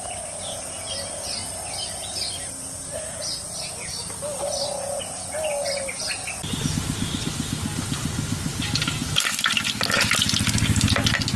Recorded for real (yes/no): yes